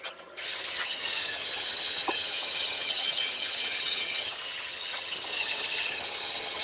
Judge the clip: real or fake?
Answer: fake